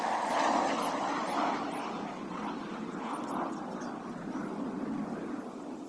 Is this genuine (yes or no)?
yes